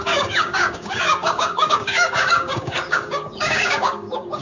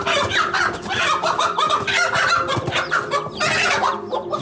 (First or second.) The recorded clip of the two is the second